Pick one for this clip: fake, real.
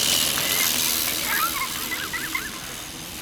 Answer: real